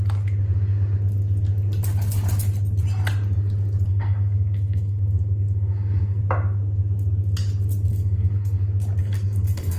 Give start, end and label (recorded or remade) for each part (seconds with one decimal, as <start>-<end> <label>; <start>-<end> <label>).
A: 0.0-3.9 recorded; 3.9-6.2 remade; 6.2-7.9 recorded; 7.9-8.6 remade; 8.6-9.0 recorded; 9.0-9.8 remade